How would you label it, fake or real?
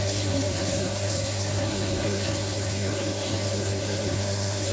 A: fake